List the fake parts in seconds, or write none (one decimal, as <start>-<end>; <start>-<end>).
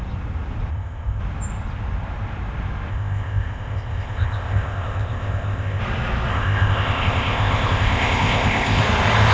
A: 0.7-1.2; 2.9-5.8; 6.3-8.8